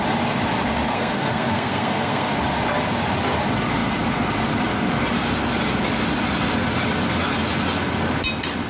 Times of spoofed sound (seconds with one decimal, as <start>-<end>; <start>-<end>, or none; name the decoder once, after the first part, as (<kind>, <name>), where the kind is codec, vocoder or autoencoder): 0.9-2.3 (codec, SNAC)